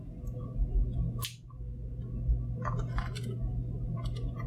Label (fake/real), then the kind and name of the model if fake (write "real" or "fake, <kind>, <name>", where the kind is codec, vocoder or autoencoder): real